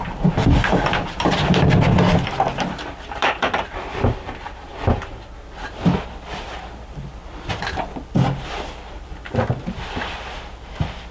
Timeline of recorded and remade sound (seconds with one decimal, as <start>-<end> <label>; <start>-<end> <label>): 0.0-4.7 remade; 4.7-6.6 recorded; 6.6-7.2 remade; 7.2-11.1 recorded